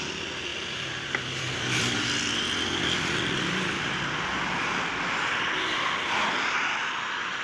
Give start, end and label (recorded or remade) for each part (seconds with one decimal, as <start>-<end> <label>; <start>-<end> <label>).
0.0-0.5 recorded; 0.5-4.3 remade; 4.3-7.4 recorded